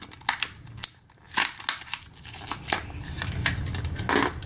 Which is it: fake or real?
real